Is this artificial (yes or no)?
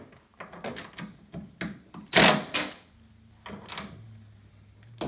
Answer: no